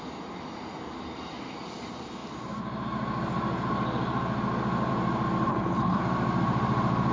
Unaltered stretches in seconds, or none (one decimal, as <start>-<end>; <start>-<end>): 0.0-5.5; 6.0-7.1